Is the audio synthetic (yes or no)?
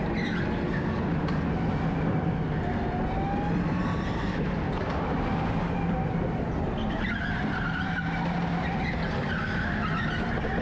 no